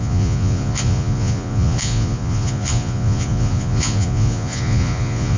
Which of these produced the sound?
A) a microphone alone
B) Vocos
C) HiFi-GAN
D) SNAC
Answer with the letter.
B